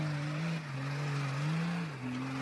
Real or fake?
real